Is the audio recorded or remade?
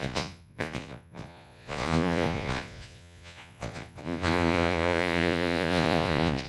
remade